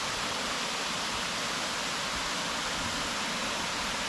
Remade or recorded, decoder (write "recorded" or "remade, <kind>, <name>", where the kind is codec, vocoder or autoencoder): recorded